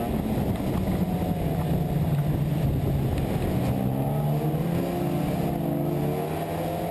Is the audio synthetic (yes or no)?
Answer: no